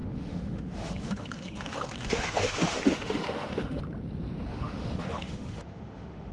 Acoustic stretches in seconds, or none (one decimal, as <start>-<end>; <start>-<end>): 3.8-4.5